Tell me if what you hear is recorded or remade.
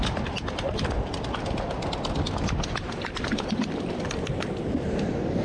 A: recorded